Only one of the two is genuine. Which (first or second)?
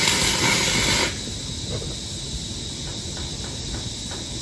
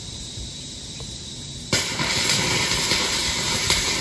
first